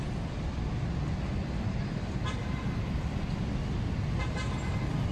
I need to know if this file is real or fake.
real